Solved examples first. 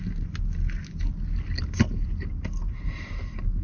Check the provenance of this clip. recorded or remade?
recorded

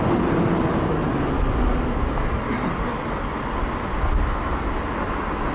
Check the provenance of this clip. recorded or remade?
recorded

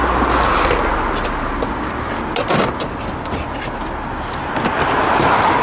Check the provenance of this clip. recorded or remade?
recorded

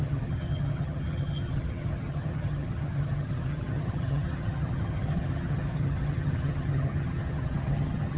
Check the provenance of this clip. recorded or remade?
remade